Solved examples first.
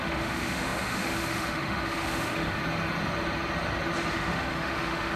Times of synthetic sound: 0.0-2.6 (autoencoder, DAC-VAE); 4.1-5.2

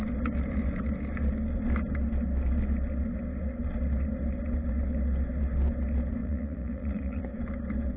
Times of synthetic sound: 6.2-7.3 (vocoder, Vocos)